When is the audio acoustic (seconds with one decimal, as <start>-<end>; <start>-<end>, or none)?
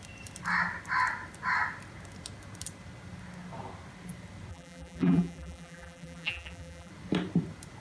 0.0-4.5; 6.9-7.8